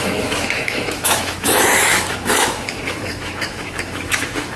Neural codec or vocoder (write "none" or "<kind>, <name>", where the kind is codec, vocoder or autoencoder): autoencoder, DAC-VAE